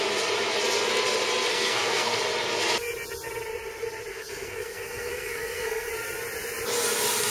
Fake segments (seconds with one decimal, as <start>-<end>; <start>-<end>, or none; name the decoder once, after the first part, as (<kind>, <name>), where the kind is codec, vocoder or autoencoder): 1.5-2.2 (codec, SNAC); 4.1-5.9